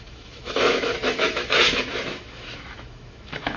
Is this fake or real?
fake